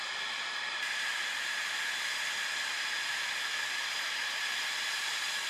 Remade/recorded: remade